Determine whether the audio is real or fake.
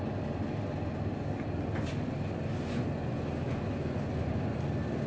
real